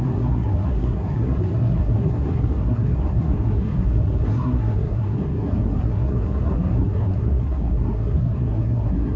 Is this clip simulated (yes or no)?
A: yes